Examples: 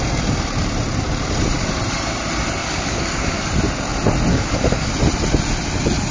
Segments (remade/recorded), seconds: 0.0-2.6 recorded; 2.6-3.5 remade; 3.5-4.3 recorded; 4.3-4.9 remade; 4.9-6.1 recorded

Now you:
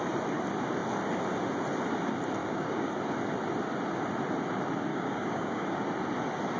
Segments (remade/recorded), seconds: 0.0-2.4 recorded; 2.4-2.9 remade; 2.9-4.9 recorded; 4.9-5.8 remade; 5.8-6.6 recorded

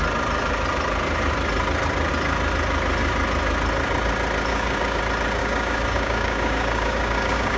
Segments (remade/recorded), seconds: 0.0-4.5 recorded; 4.5-5.0 remade; 5.0-5.4 recorded; 5.4-7.6 remade

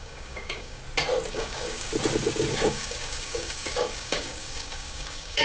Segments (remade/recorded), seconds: 0.0-0.8 remade; 0.8-1.3 recorded; 1.3-1.9 remade; 1.9-2.5 recorded; 2.5-5.4 remade